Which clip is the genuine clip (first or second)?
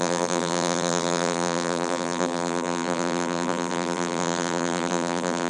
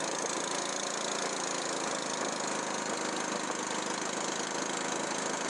second